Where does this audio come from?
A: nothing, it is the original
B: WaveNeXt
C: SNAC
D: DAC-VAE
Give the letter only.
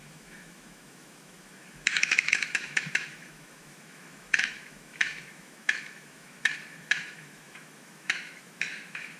D